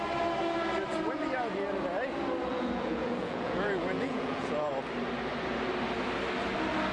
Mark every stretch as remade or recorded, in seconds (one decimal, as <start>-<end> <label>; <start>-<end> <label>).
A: 0.0-2.5 recorded; 2.5-4.7 remade; 4.7-6.9 recorded